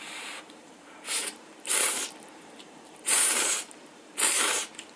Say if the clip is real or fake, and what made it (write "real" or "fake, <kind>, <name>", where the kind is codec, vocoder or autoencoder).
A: fake, vocoder, BigVGAN v2